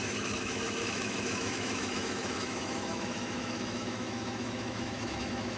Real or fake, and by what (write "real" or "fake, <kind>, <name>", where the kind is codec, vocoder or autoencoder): fake, autoencoder, DAC-VAE